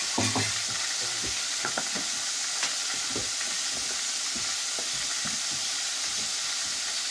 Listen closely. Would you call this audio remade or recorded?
recorded